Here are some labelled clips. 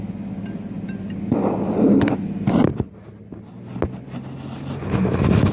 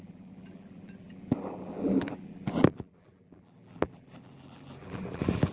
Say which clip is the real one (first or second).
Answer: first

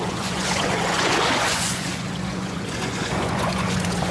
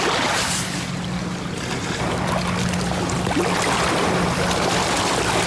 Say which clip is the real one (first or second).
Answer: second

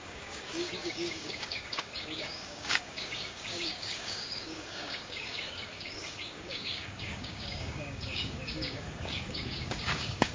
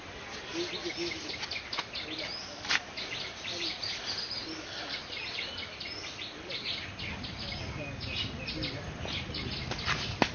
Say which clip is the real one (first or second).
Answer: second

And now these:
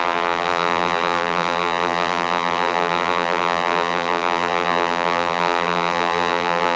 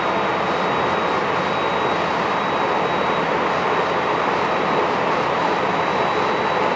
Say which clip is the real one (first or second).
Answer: second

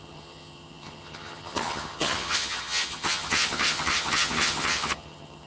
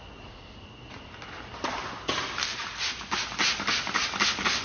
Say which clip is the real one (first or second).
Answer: second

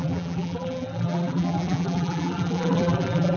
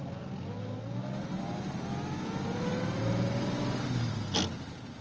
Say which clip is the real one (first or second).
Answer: second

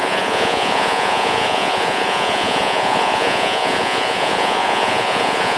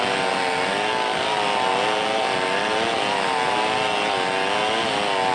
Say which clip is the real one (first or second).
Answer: second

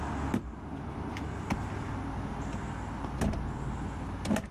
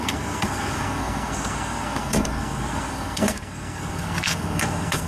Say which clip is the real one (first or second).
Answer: first